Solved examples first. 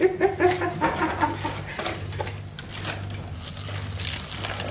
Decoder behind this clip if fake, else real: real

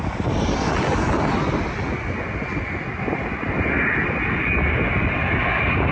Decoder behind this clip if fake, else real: real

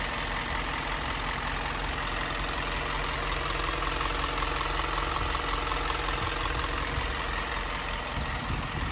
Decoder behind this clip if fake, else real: real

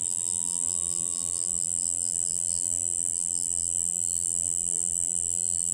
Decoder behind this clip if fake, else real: fake, vocoder, BigVGAN v2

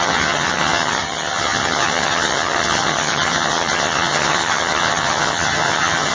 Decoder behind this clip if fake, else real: fake, vocoder, HiFi-GAN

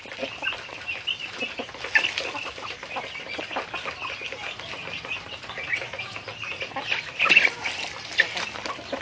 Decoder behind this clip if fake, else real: real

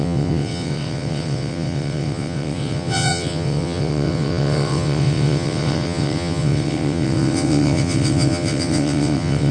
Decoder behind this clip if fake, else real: fake, vocoder, WaveNeXt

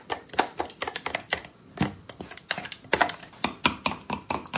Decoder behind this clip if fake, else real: real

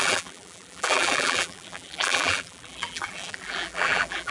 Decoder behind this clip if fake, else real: fake, vocoder, BigVGAN v2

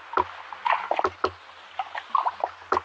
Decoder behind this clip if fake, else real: real